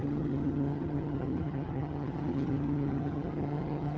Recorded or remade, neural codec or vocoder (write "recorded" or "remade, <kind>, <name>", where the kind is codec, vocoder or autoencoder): remade, vocoder, HiFi-GAN